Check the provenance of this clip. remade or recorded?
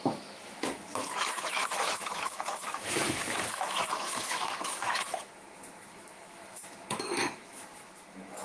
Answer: remade